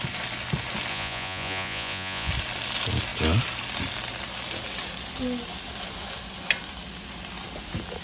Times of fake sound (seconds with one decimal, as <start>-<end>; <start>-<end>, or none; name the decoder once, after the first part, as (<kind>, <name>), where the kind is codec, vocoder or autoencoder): 0.9-2.3 (vocoder, Vocos)

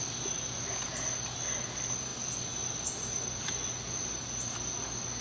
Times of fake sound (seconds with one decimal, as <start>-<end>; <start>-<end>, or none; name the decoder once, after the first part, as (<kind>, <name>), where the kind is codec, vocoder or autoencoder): none

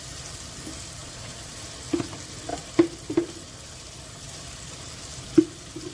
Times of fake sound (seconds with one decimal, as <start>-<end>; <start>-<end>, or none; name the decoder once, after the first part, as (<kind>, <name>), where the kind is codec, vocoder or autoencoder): 1.0-1.6 (vocoder, Vocos)